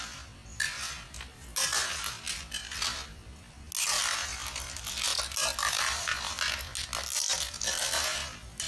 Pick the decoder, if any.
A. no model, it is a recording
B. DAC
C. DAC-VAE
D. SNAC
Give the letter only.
A